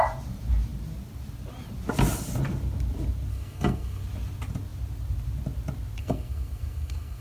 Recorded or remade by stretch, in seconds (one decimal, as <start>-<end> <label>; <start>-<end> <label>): 0.0-3.3 recorded; 3.3-4.0 remade; 4.0-6.0 recorded; 6.0-7.2 remade